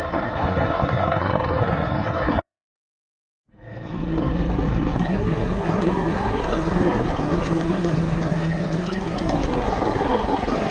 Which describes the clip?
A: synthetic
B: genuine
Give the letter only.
A